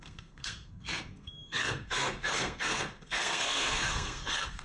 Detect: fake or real fake